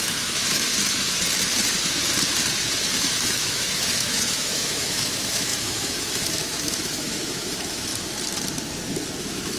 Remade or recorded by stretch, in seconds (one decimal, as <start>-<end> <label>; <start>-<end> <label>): 0.0-0.7 remade; 0.7-3.0 recorded; 3.0-7.9 remade; 7.9-9.2 recorded; 9.2-9.6 remade